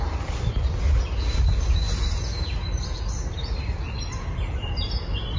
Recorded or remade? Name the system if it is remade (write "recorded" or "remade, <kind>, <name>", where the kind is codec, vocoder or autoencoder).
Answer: recorded